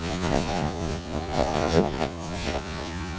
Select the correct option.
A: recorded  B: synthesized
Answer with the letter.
B